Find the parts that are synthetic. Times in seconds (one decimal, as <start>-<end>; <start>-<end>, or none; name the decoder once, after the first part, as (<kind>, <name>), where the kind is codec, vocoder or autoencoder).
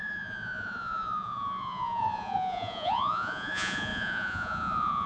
0.0-5.1 (vocoder, Vocos)